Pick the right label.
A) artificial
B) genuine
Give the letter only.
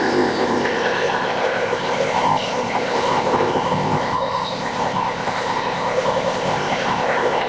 A